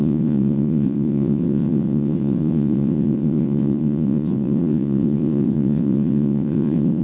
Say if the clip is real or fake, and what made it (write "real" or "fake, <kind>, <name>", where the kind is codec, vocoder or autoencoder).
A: fake, vocoder, WaveNeXt